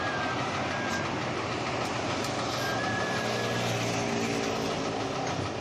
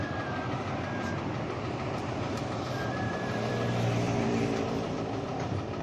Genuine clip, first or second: first